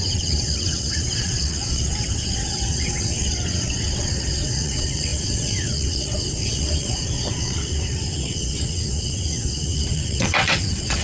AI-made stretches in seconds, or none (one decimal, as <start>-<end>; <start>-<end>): 0.0-11.0